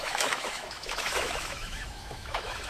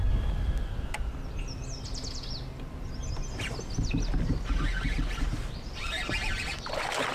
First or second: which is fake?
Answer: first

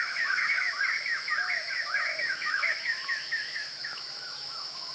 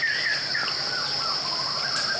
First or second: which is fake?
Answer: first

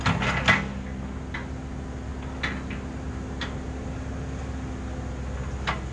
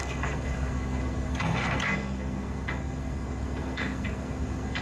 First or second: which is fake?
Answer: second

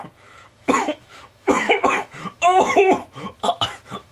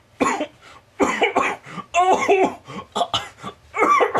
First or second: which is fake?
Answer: first